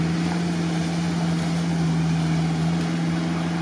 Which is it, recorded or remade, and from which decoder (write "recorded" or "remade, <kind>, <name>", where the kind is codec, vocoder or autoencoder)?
recorded